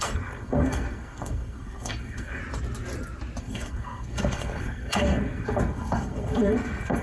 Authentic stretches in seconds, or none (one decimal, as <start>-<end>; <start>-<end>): 2.4-3.4